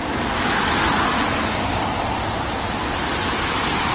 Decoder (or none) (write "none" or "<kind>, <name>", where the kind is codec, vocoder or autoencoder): none